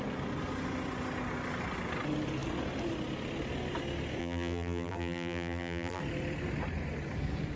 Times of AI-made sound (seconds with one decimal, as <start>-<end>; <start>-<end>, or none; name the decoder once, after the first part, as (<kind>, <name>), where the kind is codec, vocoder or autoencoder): 4.2-6.0 (vocoder, BigVGAN v2)